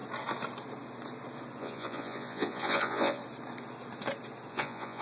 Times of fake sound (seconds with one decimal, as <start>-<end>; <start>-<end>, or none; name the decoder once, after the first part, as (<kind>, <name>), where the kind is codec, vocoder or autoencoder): 1.6-3.2 (vocoder, Vocos); 4.5-5.0